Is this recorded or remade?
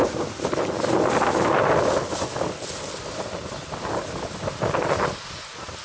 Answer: recorded